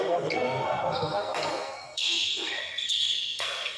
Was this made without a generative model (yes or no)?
no